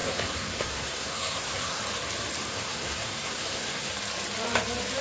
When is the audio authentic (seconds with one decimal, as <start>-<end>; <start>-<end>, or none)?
1.8-2.5; 3.9-5.0